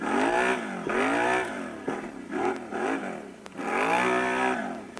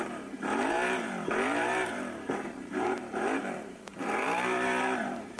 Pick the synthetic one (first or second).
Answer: second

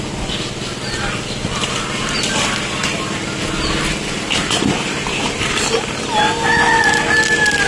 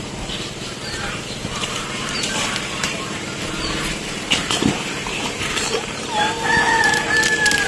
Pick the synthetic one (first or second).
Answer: second